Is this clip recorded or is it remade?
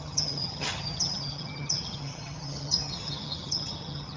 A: remade